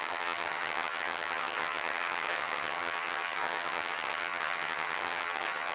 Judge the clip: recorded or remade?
remade